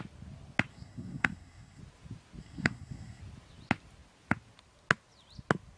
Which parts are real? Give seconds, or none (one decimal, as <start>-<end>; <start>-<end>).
0.0-0.7; 1.8-2.4; 3.2-5.8